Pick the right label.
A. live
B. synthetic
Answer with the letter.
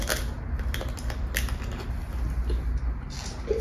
A